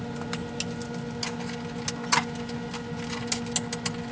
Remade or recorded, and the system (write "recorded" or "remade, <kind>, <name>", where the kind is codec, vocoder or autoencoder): recorded